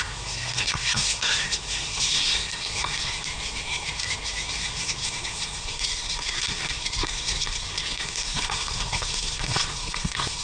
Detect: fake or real fake